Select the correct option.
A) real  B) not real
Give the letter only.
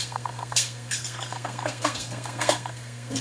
B